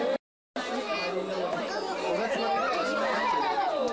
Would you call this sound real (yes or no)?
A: yes